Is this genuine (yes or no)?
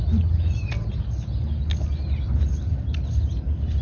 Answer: yes